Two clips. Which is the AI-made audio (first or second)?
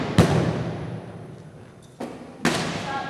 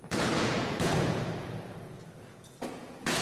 second